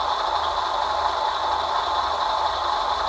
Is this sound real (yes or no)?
yes